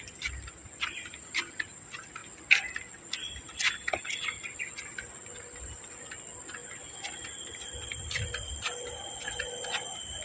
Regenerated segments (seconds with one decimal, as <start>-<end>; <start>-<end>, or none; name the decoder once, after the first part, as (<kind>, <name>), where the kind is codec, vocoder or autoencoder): none